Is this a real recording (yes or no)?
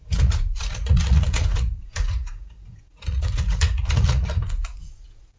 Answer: no